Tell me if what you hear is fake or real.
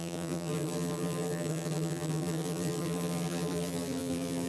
fake